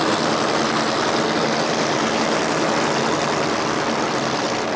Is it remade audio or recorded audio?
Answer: recorded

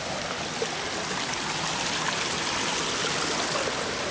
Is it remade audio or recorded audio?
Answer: recorded